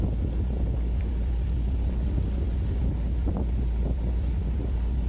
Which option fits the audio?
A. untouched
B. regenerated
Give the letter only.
A